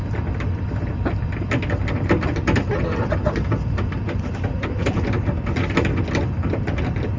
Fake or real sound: real